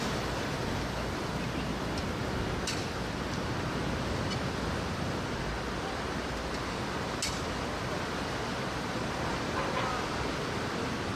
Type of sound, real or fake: real